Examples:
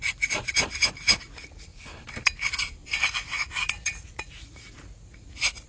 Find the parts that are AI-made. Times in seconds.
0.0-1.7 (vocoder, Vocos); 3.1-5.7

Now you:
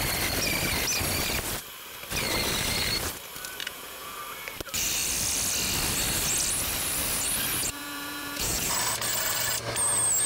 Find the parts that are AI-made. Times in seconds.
3.6-4.2 (vocoder, Vocos); 7.6-8.7

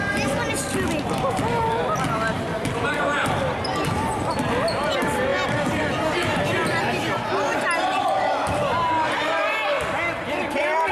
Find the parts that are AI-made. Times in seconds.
none